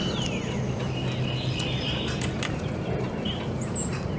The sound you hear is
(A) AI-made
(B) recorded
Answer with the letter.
B